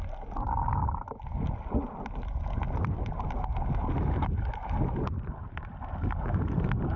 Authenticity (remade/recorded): recorded